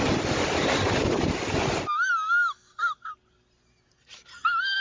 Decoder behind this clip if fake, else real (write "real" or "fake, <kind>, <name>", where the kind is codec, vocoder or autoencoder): real